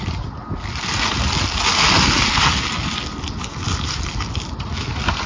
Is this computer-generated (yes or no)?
no